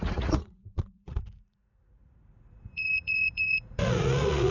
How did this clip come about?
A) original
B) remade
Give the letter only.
B